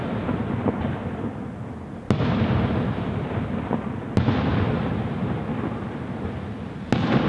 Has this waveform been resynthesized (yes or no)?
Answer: no